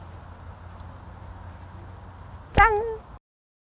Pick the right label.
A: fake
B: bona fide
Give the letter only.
B